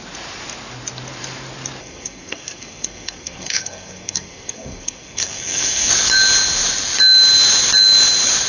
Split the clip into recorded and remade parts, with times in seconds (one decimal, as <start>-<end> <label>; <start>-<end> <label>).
0.0-1.8 recorded; 1.8-5.9 remade; 5.9-8.5 recorded